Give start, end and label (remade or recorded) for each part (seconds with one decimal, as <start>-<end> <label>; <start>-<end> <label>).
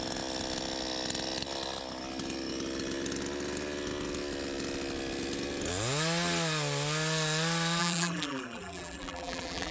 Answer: 0.0-7.8 recorded; 7.8-9.7 remade